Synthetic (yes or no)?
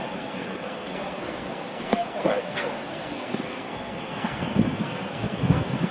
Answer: yes